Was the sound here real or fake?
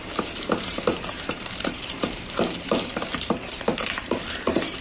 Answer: fake